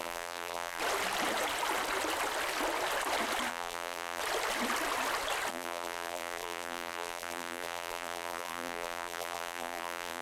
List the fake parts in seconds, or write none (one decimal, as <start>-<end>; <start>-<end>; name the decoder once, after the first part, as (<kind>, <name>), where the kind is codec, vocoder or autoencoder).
0.0-0.8 (vocoder, BigVGAN v2); 3.5-4.2; 5.5-10.2